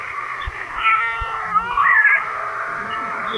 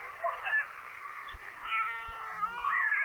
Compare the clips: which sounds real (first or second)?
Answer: second